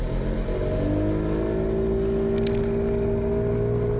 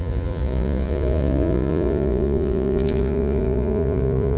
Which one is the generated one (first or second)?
second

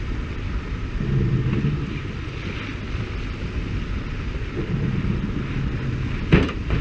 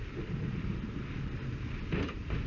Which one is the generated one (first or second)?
second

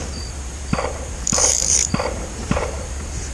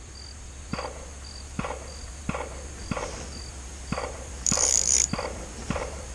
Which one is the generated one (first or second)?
first